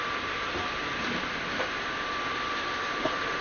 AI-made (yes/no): no